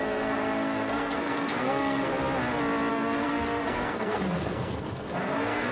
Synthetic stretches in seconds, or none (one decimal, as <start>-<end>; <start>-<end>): 0.0-2.1; 2.9-5.7